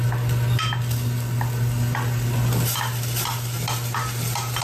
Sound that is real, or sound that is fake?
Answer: real